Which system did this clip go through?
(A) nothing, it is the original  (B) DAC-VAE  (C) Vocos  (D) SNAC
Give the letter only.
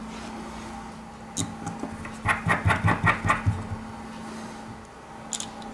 A